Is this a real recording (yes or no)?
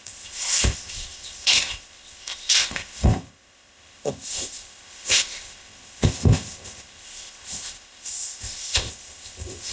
no